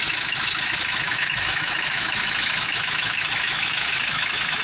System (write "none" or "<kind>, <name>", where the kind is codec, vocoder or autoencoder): autoencoder, DAC-VAE